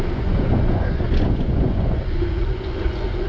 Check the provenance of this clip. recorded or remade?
remade